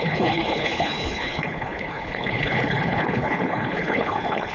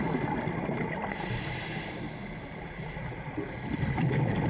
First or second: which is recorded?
second